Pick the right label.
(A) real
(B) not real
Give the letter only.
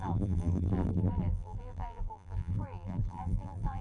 B